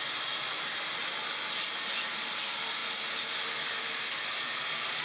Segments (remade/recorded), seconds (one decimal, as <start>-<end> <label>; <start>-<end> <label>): 0.0-5.0 recorded